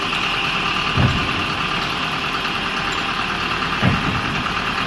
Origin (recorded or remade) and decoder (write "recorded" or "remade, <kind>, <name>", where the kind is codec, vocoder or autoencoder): recorded